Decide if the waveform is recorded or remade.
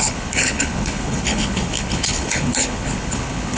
remade